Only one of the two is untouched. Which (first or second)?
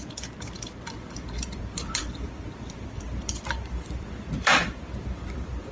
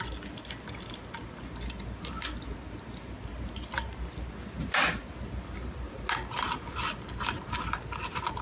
second